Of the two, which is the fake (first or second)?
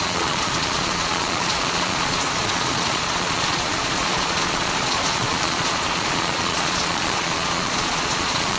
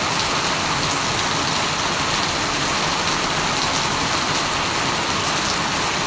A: first